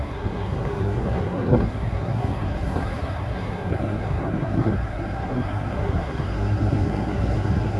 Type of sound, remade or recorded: remade